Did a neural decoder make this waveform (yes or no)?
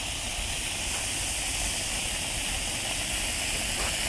no